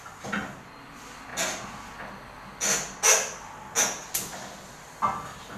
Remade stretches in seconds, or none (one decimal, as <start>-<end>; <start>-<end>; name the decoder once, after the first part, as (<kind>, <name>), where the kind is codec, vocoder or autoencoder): none